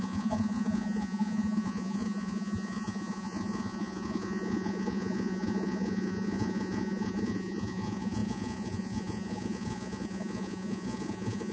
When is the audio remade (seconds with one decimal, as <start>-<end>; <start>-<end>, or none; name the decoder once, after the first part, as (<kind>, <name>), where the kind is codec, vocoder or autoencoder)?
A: 0.0-11.5 (vocoder, Vocos)